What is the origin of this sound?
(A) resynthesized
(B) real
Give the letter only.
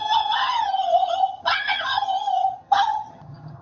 A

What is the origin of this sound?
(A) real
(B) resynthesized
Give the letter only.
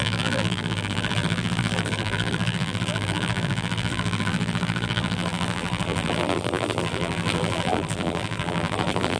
B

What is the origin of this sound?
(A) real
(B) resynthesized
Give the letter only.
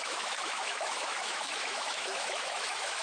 B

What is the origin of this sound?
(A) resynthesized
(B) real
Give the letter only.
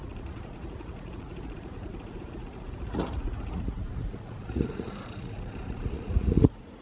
A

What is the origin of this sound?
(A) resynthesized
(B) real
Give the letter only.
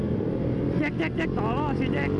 B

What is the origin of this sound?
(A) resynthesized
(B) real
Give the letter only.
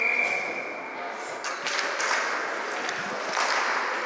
B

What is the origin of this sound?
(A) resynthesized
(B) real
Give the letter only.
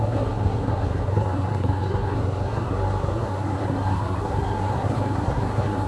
A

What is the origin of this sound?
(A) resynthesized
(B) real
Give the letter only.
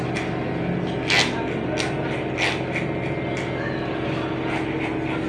B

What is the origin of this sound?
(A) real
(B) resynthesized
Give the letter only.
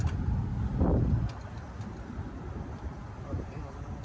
B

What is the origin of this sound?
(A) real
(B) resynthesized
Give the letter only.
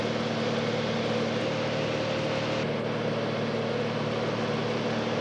A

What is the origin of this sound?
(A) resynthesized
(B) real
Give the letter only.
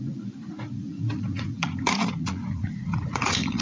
A